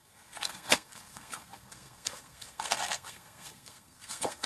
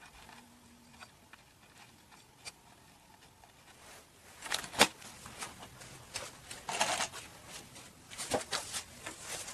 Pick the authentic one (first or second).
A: second